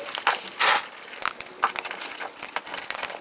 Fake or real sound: real